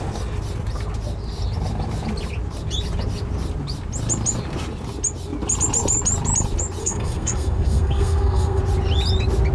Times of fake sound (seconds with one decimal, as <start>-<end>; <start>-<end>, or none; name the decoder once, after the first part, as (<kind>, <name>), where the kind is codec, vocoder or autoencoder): 6.8-8.6 (codec, SNAC)